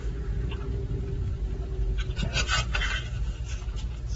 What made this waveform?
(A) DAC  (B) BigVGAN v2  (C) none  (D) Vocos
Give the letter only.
C